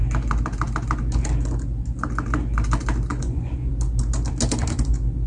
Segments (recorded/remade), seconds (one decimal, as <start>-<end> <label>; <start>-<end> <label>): 0.0-3.1 recorded; 3.1-3.7 remade; 3.7-5.3 recorded